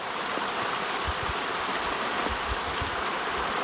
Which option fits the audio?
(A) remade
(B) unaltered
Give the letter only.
B